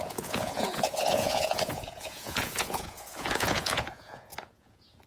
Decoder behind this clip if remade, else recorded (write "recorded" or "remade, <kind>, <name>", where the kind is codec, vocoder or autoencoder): remade, vocoder, Vocos